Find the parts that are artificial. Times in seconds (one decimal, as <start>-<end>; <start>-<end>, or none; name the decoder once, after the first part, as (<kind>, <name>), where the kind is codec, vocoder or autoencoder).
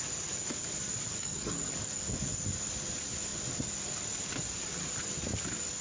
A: 1.1-1.7 (codec, DAC)